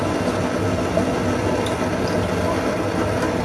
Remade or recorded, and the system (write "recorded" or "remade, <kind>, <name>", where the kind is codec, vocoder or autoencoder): recorded